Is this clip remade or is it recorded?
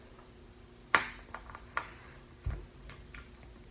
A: remade